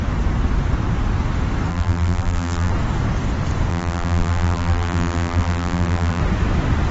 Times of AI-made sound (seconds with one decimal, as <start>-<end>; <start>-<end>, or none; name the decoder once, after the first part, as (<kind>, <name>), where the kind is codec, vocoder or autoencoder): 1.7-2.7 (vocoder, BigVGAN v2); 3.7-6.2